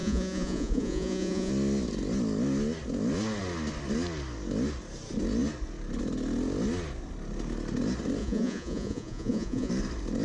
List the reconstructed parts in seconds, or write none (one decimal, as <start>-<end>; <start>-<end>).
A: 0.0-1.5; 8.2-9.7